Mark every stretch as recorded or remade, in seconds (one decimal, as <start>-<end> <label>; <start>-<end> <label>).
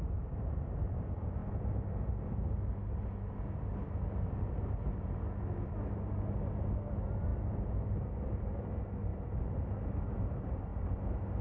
0.0-11.4 recorded